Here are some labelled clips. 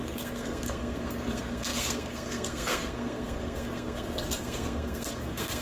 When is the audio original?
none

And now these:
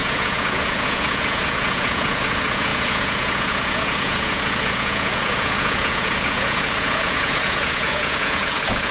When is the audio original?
none